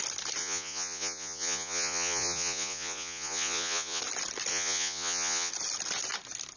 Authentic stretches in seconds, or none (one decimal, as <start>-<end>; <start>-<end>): 0.0-0.4; 4.0-4.5; 5.5-6.6